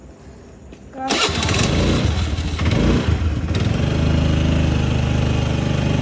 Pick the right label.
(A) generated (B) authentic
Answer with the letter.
B